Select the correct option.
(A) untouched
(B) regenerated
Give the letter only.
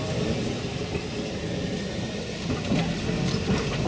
A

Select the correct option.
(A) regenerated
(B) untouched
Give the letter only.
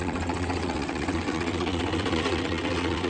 A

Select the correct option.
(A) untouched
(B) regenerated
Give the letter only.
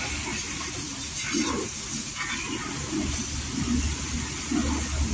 A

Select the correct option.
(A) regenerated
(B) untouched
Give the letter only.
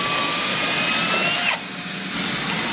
B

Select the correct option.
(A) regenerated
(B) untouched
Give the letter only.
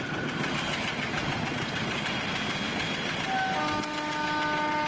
B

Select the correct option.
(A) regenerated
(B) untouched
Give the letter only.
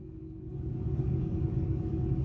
A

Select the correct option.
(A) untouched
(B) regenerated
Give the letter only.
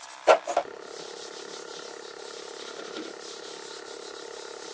A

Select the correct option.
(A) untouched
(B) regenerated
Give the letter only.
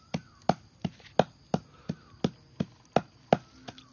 A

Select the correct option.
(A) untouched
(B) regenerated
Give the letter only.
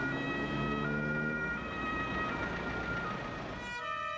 A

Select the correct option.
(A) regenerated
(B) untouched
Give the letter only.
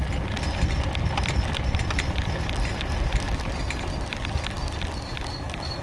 B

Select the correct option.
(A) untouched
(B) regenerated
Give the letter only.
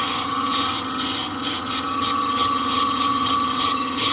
B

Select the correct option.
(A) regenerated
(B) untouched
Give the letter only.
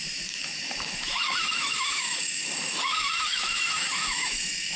A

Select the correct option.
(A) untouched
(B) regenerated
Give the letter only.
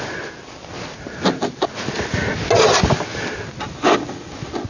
A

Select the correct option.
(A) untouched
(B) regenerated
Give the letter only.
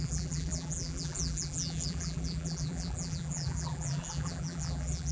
B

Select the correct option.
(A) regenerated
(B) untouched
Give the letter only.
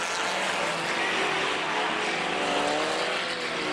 B